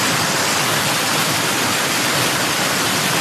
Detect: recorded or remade remade